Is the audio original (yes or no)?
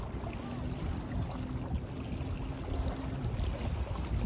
yes